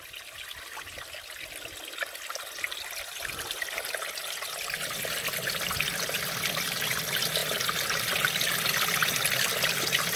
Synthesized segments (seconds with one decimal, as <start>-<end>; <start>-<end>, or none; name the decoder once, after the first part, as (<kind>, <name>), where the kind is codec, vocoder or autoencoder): none